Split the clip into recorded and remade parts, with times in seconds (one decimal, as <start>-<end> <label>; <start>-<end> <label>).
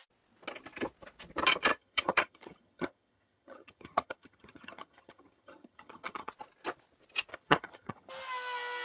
0.0-1.7 recorded; 1.7-6.3 remade; 6.3-7.3 recorded; 7.3-8.1 remade; 8.1-8.8 recorded